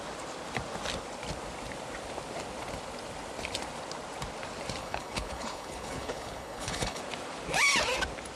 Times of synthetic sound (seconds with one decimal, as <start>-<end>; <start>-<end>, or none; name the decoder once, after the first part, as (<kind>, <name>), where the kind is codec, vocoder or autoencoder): 4.8-7.0 (codec, HILCodec)